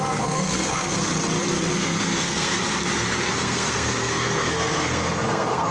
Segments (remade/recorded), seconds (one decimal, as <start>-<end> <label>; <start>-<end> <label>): 0.0-1.1 remade; 1.1-1.7 recorded; 1.7-2.6 remade; 2.6-3.3 recorded; 3.3-5.7 remade